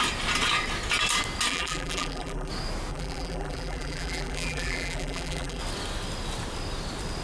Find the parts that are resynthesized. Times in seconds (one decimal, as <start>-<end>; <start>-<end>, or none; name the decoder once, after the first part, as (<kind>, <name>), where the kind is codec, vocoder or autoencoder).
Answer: 1.5-2.5 (vocoder, BigVGAN v2); 2.9-5.6